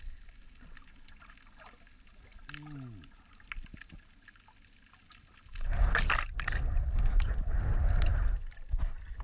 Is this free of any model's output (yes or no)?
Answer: yes